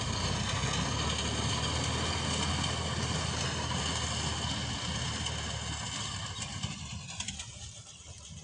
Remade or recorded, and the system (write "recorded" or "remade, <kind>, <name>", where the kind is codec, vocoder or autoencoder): recorded